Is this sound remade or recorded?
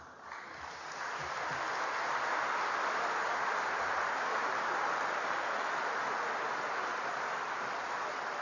recorded